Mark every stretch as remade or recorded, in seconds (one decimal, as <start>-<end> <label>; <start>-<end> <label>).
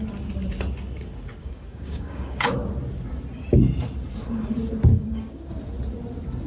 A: 0.0-1.4 recorded; 1.4-2.5 remade; 2.5-4.9 recorded; 4.9-5.5 remade; 5.5-6.5 recorded